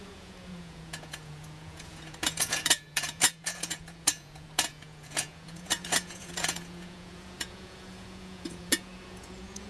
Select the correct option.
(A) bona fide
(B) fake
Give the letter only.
B